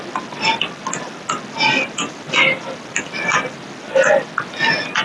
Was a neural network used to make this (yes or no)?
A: no